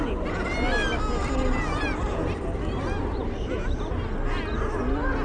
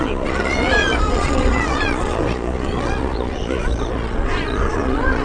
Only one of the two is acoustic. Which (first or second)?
first